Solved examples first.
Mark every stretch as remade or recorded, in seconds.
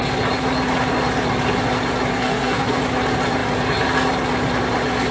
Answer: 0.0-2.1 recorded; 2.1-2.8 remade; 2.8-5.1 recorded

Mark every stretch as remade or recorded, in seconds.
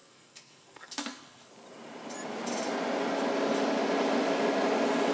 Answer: 0.0-1.5 remade; 1.5-5.1 recorded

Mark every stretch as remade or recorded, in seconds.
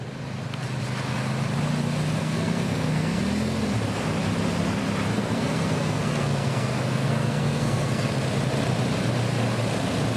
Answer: 0.0-2.2 recorded; 2.2-3.2 remade; 3.2-5.1 recorded; 5.1-8.1 remade; 8.1-10.2 recorded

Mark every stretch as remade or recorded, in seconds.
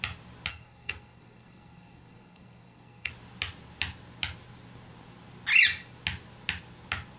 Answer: 0.0-0.5 recorded; 0.5-3.1 remade; 3.1-7.2 recorded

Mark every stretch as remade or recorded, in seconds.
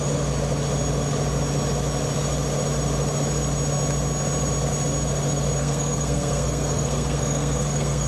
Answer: 0.0-5.6 recorded; 5.6-8.1 remade